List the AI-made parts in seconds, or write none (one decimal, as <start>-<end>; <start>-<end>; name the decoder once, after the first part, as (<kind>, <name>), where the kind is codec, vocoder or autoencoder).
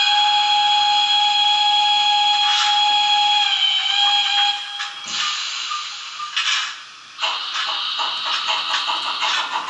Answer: none